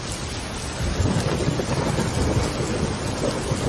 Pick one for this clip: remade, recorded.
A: recorded